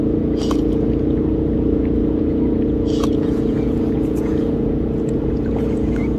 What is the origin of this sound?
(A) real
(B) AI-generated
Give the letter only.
B